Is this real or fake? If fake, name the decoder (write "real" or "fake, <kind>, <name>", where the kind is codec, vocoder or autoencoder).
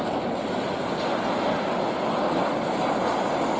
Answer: real